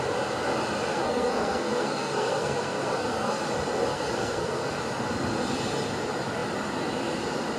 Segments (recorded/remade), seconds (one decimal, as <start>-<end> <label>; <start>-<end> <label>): 0.0-0.9 recorded; 0.9-3.4 remade; 3.4-3.9 recorded; 3.9-4.7 remade; 4.7-7.6 recorded